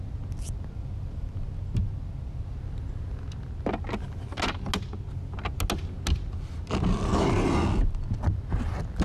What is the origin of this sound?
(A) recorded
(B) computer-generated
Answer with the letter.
A